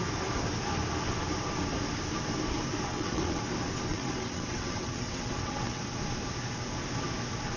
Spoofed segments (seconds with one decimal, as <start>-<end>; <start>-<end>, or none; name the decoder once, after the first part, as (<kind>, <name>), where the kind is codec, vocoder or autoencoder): 2.9-3.4 (vocoder, WaveNeXt); 3.9-5.8